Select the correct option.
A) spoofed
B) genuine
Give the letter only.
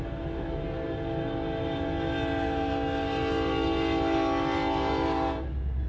B